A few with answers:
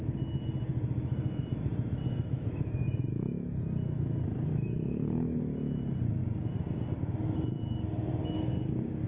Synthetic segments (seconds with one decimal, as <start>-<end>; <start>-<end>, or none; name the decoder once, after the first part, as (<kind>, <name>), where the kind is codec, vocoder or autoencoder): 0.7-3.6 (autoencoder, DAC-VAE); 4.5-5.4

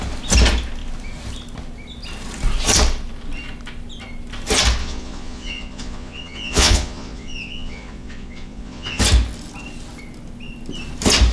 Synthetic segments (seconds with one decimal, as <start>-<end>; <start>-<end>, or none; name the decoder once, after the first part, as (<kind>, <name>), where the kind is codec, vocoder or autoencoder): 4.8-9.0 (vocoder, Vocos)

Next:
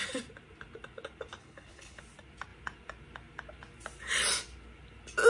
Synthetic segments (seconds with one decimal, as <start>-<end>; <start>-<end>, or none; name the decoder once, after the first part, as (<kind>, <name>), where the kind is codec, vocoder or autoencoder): 1.4-2.0 (codec, HILCodec)

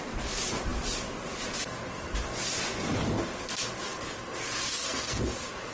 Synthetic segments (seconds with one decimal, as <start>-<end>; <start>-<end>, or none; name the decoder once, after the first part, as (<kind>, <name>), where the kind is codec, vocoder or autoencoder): 4.7-5.2 (codec, SNAC)

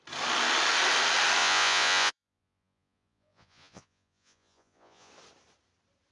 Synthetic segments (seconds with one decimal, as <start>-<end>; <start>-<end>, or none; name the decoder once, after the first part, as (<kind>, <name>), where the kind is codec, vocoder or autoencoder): 1.4-5.1 (vocoder, Vocos)